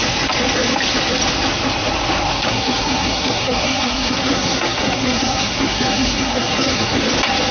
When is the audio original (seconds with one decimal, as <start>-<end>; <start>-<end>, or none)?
0.0-2.5; 7.0-7.5